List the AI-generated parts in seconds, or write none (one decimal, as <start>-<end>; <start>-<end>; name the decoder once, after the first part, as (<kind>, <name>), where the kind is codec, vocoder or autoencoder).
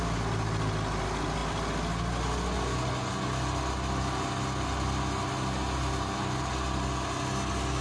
none